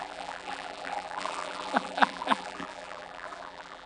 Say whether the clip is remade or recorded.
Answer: remade